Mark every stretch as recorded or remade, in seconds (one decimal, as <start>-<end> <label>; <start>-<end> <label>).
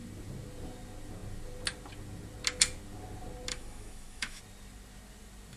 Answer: 0.0-3.5 recorded; 3.5-4.4 remade; 4.4-5.6 recorded